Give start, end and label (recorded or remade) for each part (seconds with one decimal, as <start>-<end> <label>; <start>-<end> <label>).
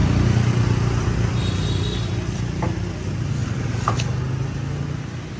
0.0-5.4 recorded